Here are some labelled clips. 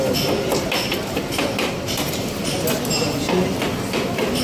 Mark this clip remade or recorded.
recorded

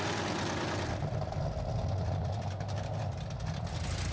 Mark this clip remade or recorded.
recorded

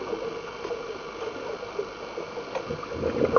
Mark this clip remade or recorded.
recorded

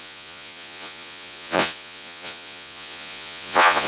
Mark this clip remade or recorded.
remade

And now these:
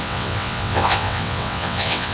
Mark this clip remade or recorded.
remade